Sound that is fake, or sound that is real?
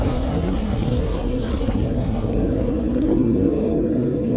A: fake